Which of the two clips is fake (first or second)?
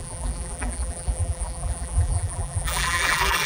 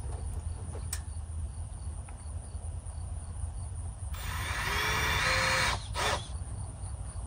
first